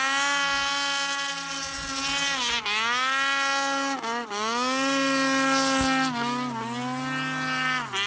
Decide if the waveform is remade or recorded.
recorded